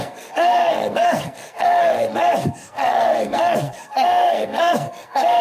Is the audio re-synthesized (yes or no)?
yes